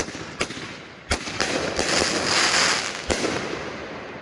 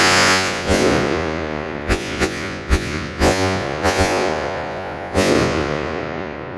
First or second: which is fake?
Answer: second